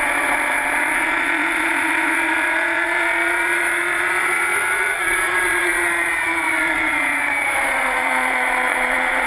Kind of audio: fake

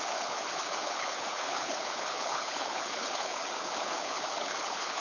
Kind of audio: fake